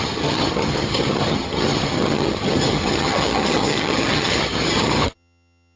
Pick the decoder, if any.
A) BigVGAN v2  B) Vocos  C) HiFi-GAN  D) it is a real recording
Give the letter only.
C